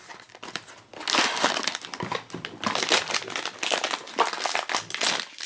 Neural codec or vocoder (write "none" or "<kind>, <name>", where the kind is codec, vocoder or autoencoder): none